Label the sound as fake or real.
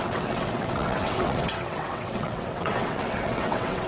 fake